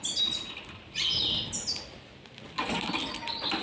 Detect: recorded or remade recorded